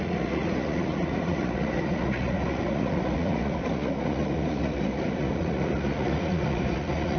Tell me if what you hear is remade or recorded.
remade